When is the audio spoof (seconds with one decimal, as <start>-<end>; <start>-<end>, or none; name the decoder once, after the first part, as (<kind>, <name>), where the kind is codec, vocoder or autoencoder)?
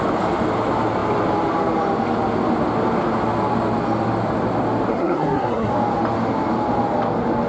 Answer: 4.9-5.7 (codec, SNAC)